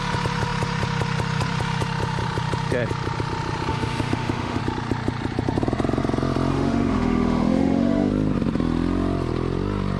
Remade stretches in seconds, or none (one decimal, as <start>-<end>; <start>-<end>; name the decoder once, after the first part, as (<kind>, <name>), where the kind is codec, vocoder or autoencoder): 3.7-4.6 (autoencoder, DAC-VAE); 6.5-8.1